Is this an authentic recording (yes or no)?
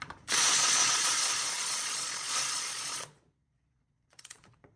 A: no